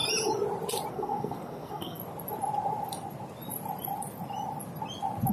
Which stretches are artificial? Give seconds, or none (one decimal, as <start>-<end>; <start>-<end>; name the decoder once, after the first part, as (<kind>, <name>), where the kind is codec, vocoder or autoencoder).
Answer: 0.9-2.0 (codec, SNAC)